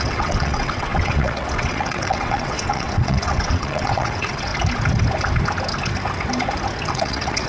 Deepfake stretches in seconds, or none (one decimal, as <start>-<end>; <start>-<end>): 0.0-4.5; 6.9-7.5